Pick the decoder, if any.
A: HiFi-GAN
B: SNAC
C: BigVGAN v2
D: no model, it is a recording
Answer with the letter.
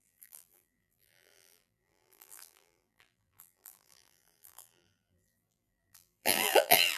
C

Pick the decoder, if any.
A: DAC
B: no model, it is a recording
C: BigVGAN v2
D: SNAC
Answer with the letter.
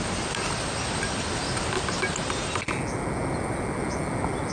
B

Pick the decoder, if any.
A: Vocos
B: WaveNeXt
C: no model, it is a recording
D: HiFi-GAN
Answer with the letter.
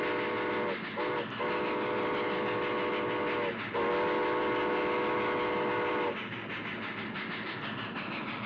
C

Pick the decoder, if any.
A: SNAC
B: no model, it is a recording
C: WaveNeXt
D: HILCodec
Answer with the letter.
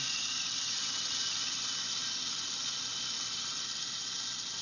B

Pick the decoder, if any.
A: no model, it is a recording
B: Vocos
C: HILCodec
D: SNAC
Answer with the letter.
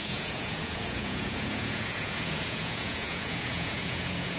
B